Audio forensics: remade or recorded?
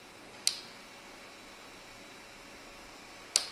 recorded